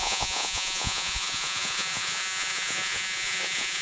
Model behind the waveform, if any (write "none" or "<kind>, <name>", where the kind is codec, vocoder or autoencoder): vocoder, Vocos